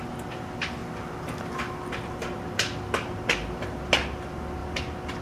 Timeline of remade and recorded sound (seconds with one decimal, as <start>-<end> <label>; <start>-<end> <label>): 0.0-5.2 recorded